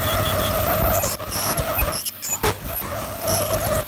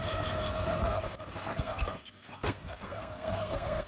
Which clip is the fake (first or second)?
second